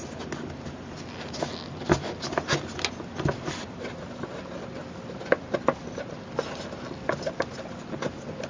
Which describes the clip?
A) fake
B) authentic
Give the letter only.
B